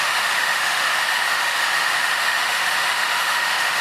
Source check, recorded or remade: remade